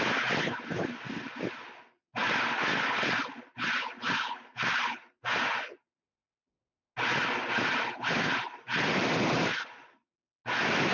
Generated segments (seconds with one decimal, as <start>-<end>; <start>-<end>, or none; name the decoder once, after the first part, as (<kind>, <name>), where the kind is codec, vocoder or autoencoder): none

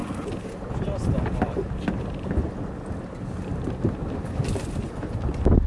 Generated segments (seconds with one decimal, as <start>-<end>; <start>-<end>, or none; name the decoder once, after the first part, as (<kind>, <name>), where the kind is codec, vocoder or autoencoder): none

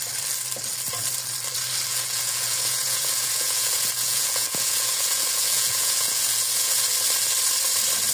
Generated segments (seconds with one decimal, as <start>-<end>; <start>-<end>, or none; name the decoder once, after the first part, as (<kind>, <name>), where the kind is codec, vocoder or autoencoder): 1.9-6.8 (vocoder, Vocos)

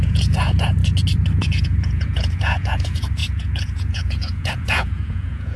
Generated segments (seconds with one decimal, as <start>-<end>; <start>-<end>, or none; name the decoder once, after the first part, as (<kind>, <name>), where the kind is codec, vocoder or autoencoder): 0.0-0.8 (vocoder, Vocos); 1.4-5.6

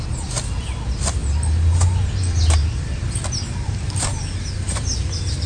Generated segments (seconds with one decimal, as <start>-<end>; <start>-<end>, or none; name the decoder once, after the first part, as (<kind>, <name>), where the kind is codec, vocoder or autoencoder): none

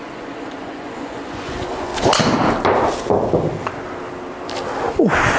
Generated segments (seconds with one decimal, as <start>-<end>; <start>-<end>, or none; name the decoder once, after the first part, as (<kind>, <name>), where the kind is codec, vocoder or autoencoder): 0.0-1.9 (vocoder, Vocos)